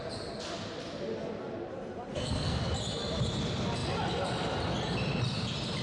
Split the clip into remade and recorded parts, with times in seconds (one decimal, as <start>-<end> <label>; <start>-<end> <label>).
0.0-2.1 recorded; 2.1-2.6 remade; 2.6-5.8 recorded